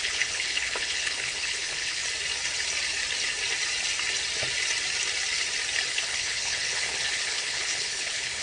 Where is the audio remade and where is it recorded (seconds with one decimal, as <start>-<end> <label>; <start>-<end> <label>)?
0.0-2.0 remade; 2.0-5.9 recorded; 5.9-8.4 remade